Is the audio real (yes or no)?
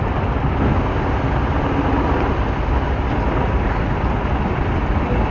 yes